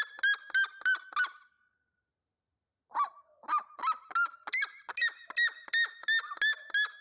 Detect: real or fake real